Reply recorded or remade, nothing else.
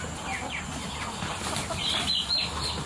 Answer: recorded